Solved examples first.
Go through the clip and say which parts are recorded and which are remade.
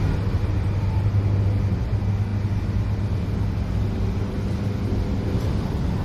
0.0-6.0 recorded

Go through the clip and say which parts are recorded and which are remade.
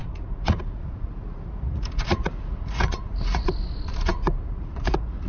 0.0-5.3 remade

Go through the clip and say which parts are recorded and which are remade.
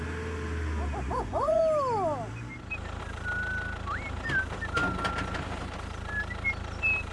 0.0-1.1 recorded; 1.1-1.6 remade; 1.6-7.1 recorded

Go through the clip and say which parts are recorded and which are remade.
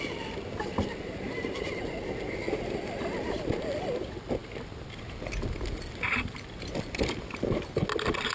0.0-8.3 recorded